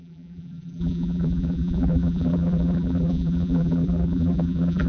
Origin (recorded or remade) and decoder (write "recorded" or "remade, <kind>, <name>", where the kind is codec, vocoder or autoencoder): remade, vocoder, BigVGAN v2